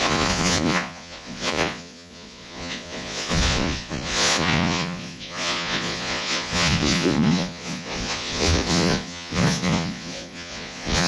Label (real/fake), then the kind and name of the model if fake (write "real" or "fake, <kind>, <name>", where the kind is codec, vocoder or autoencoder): fake, vocoder, Vocos